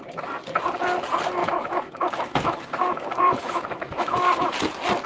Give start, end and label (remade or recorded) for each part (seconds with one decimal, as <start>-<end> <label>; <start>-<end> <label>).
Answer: 0.0-1.4 recorded; 1.4-4.5 remade; 4.5-5.1 recorded